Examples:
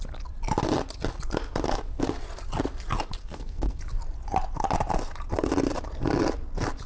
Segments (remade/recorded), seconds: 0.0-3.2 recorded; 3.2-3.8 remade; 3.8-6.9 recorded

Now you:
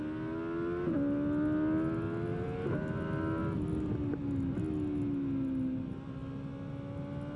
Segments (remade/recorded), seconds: 0.0-7.4 recorded

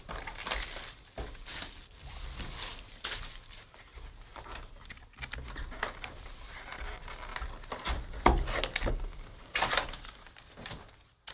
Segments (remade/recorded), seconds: 0.0-3.9 remade; 3.9-4.7 recorded; 4.7-7.3 remade; 7.3-8.9 recorded; 8.9-11.3 remade

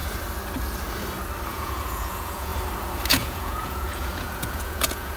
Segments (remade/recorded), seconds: 0.0-1.5 recorded; 1.5-2.5 remade; 2.5-3.1 recorded; 3.1-5.2 remade

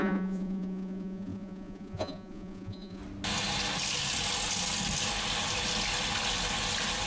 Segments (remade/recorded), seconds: 0.0-3.0 remade; 3.0-7.1 recorded

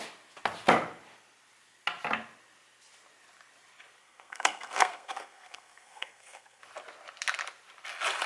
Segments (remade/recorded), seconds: 0.0-4.0 recorded; 4.0-6.6 remade; 6.6-8.3 recorded